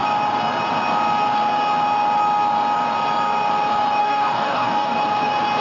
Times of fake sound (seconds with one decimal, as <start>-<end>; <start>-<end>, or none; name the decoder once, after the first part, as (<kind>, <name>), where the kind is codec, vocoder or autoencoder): 4.0-5.0 (codec, DAC)